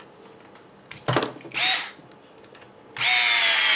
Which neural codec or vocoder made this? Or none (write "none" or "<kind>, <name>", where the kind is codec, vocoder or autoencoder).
none